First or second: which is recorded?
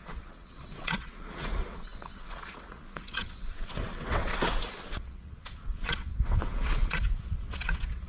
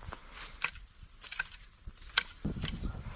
second